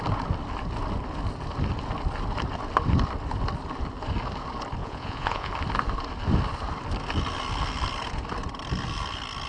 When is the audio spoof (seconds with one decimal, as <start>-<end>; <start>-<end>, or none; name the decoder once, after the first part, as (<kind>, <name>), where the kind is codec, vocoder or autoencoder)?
4.8-5.5 (vocoder, Vocos)